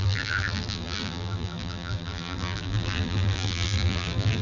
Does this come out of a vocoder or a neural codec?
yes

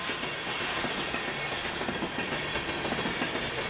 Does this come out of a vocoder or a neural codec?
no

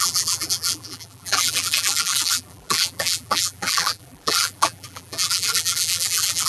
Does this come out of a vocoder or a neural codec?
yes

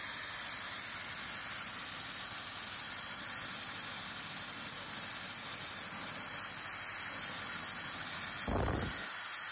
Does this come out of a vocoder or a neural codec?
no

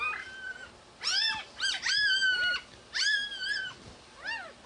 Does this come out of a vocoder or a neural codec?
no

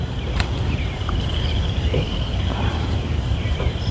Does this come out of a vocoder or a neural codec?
yes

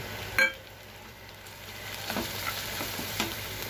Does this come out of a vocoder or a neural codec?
yes